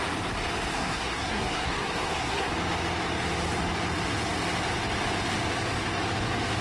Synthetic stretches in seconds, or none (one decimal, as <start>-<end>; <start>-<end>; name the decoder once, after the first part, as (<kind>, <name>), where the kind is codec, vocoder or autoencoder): 0.7-2.5 (codec, SNAC)